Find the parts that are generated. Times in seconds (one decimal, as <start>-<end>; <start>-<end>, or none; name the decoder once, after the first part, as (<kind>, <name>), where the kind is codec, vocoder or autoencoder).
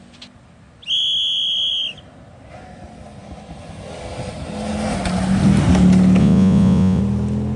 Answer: 6.2-7.0 (vocoder, Vocos)